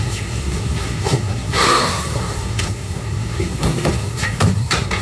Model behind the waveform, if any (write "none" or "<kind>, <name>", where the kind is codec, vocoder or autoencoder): codec, SNAC